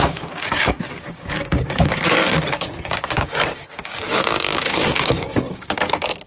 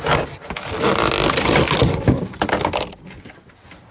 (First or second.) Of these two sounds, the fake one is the first